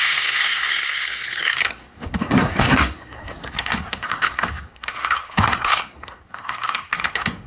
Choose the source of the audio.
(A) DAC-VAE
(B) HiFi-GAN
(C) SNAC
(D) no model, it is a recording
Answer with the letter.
C